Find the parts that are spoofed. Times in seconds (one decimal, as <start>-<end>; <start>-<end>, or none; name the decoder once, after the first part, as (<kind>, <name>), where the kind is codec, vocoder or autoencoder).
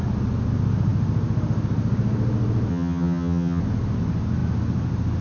2.7-3.6 (vocoder, HiFi-GAN)